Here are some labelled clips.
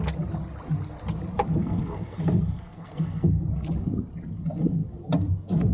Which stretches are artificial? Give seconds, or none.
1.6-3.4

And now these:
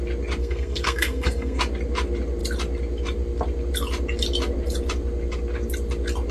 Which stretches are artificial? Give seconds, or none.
0.4-1.6

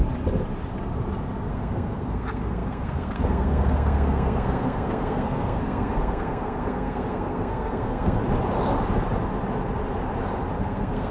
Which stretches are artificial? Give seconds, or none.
1.5-8.2; 10.6-11.1

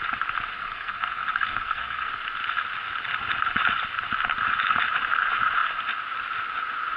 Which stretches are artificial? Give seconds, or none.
0.5-2.1

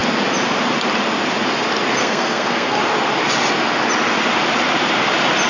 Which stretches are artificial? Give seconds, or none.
2.0-2.8